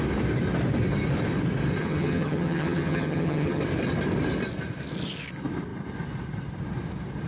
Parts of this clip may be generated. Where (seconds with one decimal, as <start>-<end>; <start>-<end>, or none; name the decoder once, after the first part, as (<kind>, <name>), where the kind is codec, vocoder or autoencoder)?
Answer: 1.8-3.6 (vocoder, HiFi-GAN)